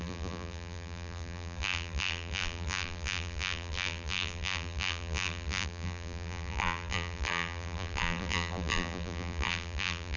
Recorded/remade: remade